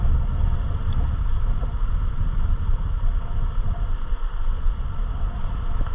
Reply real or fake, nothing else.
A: real